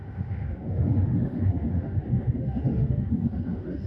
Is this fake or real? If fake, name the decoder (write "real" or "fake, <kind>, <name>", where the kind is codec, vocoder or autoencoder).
fake, autoencoder, DAC-VAE